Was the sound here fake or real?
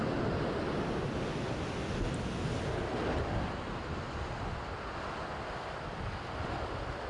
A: real